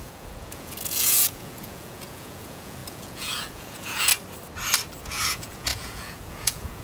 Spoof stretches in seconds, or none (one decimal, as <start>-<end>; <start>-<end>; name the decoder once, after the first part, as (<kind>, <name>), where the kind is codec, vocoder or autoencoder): 0.0-4.1 (vocoder, Vocos); 5.0-6.8